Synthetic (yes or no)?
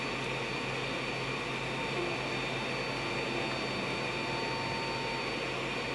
no